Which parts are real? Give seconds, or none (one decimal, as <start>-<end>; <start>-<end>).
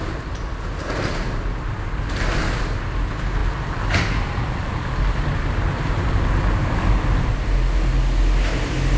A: 0.0-9.0